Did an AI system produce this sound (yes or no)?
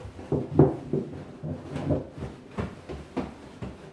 no